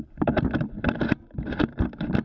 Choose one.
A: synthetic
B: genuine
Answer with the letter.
A